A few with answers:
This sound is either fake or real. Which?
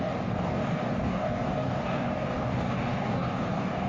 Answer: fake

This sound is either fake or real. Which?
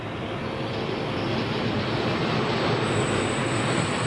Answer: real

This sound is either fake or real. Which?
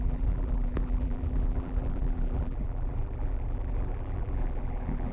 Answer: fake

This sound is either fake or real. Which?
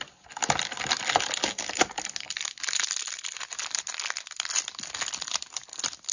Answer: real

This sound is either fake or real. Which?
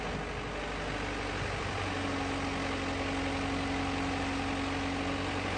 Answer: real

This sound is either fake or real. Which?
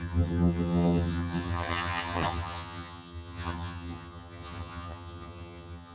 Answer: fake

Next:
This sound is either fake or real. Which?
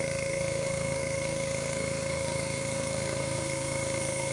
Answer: fake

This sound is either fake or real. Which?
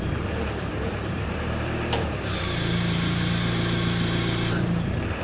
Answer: fake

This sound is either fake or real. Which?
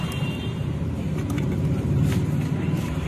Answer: fake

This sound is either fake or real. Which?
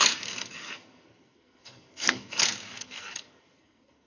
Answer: fake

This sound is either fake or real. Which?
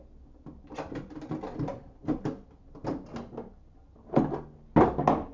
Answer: real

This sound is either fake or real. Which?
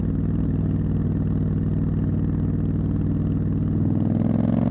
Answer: real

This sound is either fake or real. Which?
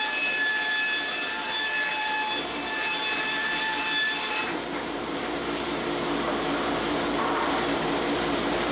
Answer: fake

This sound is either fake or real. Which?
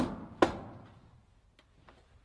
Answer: real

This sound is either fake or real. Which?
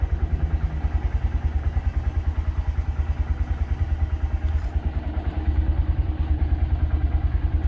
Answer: real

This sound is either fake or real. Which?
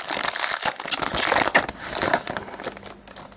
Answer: real